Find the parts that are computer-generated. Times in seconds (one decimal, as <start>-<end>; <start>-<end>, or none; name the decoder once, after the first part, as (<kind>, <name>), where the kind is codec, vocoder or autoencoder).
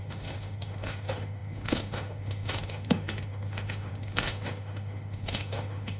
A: 0.0-6.0 (autoencoder, DAC-VAE)